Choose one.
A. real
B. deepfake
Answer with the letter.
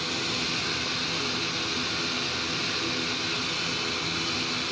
A